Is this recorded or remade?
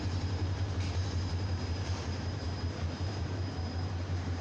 remade